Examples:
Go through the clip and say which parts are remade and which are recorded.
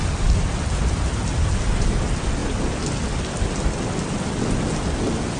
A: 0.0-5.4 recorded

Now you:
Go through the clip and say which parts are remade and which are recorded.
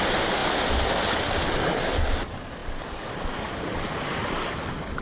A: 0.0-5.0 recorded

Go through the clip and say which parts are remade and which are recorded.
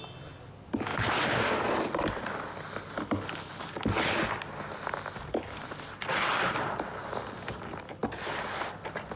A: 0.0-9.2 recorded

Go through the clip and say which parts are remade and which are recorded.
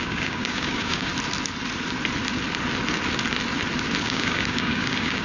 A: 0.0-1.1 remade; 1.1-4.0 recorded; 4.0-5.2 remade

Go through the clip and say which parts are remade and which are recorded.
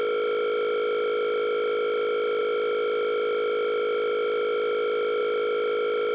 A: 0.0-6.1 recorded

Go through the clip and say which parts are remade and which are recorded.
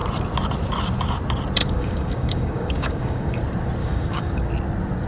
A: 0.0-1.6 recorded; 1.6-3.4 remade; 3.4-3.8 recorded; 3.8-4.5 remade; 4.5-5.1 recorded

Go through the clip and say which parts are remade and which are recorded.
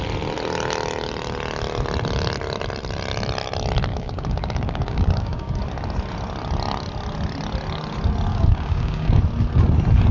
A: 0.0-3.9 recorded; 3.9-5.6 remade; 5.6-8.3 recorded; 8.3-9.2 remade; 9.2-10.1 recorded